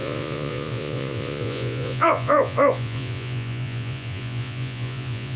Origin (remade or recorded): remade